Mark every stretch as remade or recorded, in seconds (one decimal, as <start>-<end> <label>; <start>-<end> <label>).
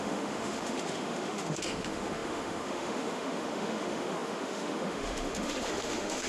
0.0-6.3 remade